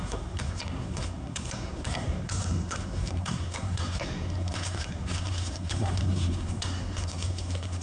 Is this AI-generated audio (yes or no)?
yes